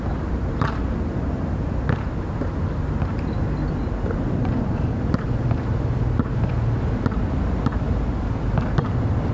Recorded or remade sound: recorded